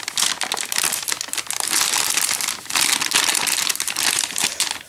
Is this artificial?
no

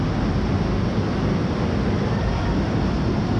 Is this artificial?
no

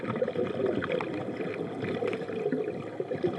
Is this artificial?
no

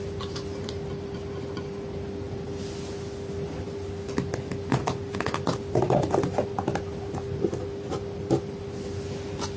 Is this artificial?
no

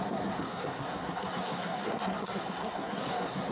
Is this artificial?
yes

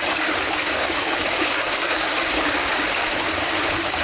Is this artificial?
yes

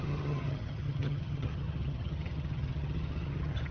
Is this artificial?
yes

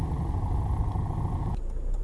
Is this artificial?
no